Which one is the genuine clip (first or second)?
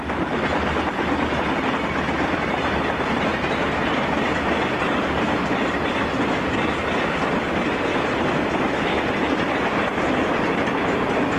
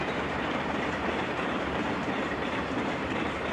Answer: first